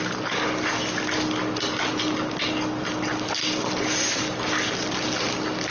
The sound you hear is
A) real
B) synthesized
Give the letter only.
A